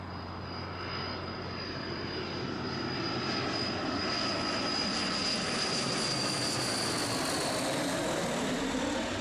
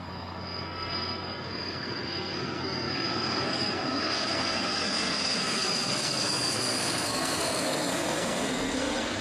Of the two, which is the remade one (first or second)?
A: second